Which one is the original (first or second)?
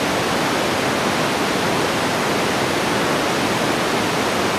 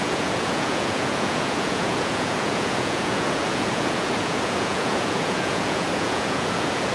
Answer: first